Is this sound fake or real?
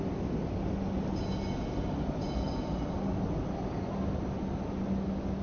real